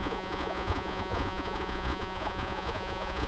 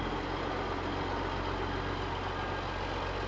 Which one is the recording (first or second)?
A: second